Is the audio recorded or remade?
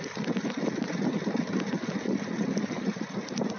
recorded